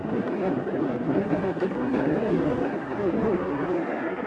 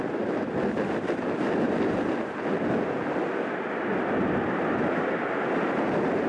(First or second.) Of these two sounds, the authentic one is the second